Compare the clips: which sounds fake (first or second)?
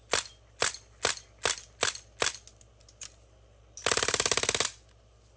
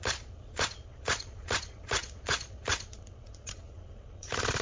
second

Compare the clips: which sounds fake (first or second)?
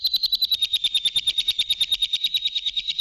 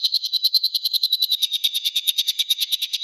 second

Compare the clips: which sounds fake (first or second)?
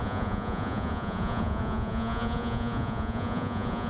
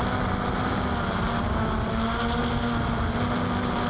first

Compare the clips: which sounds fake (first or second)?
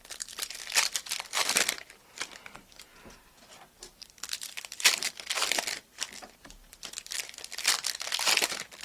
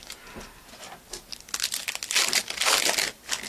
first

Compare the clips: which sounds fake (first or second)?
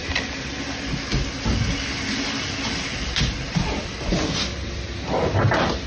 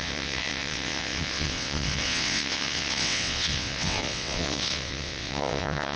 second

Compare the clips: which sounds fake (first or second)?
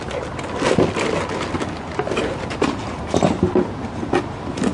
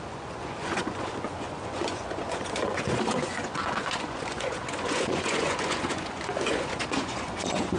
second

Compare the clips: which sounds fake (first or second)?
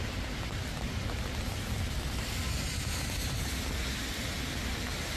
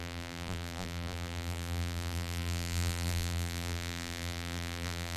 second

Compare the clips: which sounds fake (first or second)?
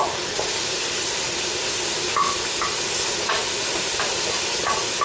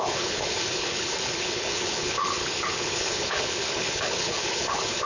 second